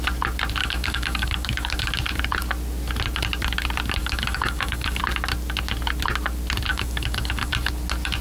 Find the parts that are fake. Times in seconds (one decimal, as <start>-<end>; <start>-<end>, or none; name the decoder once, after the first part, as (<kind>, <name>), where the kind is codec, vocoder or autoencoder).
0.6-1.9 (codec, DAC); 4.0-5.0; 6.7-7.5